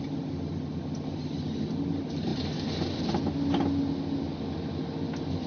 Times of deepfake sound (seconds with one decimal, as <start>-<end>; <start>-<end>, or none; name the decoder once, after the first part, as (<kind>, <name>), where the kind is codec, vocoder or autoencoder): none